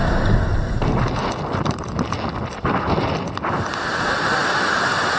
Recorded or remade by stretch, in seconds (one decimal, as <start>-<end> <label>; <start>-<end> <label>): 0.0-5.2 recorded